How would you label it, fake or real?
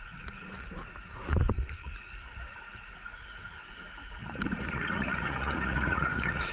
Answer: fake